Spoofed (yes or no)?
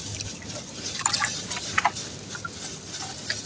no